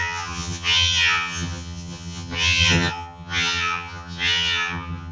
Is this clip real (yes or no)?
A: no